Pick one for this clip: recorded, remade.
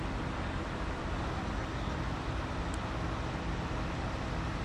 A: recorded